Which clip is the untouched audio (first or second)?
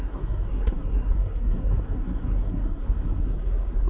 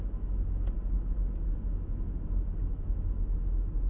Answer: second